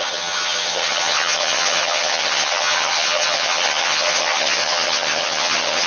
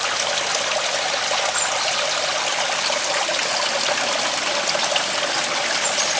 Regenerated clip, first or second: first